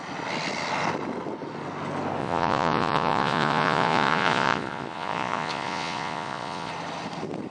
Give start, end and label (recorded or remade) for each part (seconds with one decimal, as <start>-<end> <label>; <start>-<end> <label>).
0.0-2.2 recorded; 2.2-6.7 remade; 6.7-7.5 recorded